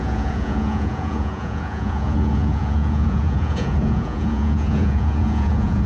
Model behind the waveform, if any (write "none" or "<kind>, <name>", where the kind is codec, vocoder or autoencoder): vocoder, Vocos